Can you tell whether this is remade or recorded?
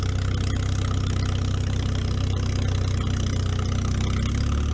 recorded